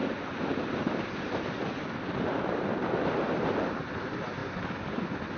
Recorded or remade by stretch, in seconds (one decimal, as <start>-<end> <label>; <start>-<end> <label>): 0.0-5.4 recorded